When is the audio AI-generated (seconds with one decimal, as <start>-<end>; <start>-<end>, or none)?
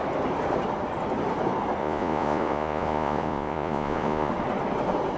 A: 1.8-4.3